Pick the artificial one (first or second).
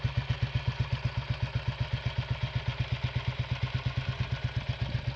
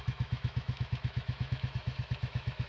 second